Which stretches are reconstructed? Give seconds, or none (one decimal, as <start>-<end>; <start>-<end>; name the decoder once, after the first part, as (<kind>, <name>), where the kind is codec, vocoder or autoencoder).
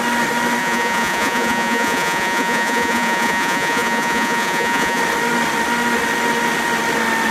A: 0.6-5.0 (vocoder, Vocos)